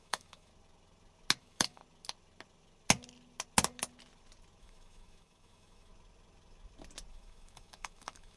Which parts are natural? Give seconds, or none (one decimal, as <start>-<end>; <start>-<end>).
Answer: 0.5-1.4; 1.8-4.6; 5.9-7.1